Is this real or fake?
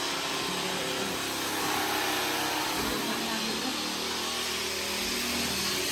real